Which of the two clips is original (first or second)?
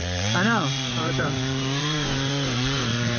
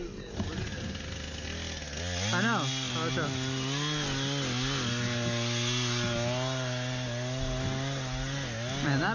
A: second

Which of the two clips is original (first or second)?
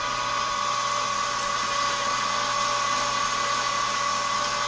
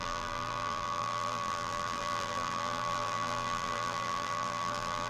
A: first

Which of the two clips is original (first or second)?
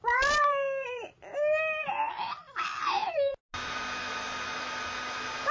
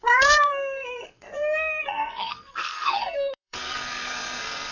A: first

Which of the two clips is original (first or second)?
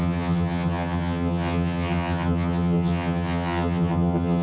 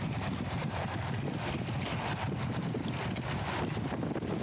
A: second